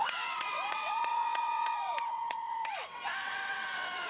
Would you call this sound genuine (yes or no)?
no